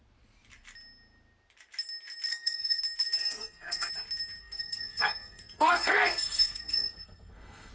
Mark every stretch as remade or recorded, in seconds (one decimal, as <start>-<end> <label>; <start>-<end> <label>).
0.0-2.3 recorded; 2.3-2.8 remade; 2.8-3.2 recorded; 3.2-3.9 remade; 3.9-4.4 recorded; 4.4-7.7 remade